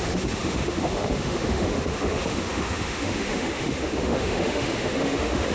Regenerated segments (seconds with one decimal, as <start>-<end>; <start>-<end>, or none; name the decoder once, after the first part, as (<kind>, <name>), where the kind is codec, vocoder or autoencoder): 0.0-5.5 (autoencoder, DAC-VAE)